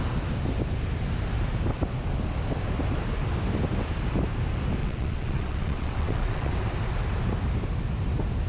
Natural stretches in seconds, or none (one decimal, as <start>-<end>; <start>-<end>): 0.0-4.8; 6.5-8.5